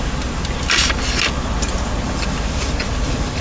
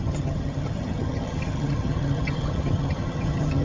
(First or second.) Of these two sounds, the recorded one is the first